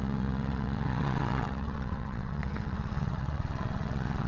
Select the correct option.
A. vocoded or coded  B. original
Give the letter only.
A